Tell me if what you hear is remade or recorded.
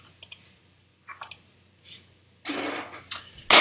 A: recorded